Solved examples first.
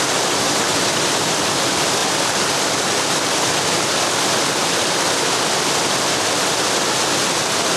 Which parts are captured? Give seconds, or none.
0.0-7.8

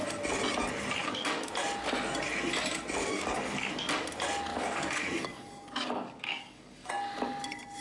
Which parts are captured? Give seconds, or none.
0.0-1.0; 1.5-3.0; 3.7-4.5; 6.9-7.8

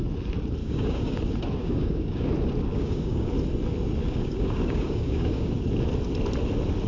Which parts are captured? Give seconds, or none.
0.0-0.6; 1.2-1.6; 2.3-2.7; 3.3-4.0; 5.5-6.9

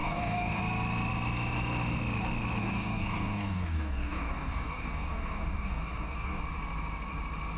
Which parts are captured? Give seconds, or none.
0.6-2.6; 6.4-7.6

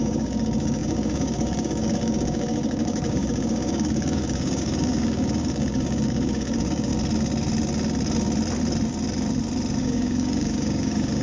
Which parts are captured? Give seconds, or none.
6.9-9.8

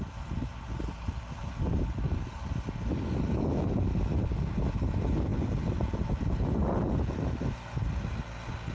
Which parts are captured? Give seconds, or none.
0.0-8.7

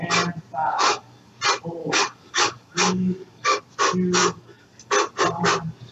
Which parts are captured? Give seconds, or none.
0.0-0.6; 1.4-1.8; 3.6-4.2; 4.9-5.9

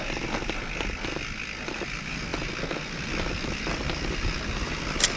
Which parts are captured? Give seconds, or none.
0.0-5.2